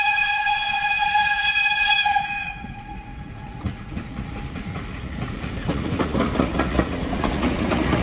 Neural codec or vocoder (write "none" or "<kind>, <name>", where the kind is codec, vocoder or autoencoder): vocoder, Vocos